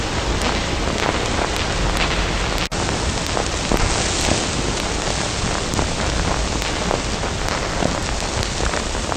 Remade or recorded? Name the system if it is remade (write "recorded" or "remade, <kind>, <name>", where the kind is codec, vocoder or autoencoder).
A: recorded